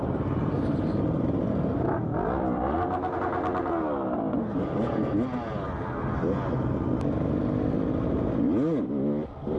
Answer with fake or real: real